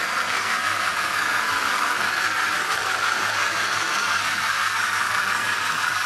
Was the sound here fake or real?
fake